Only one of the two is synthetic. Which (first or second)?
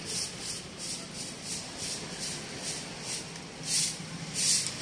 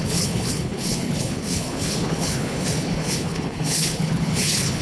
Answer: second